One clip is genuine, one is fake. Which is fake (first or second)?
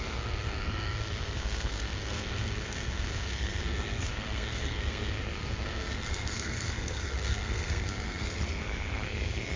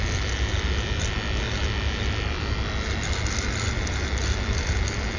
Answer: first